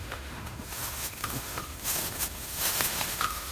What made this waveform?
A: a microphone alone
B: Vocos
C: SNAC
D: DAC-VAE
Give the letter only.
D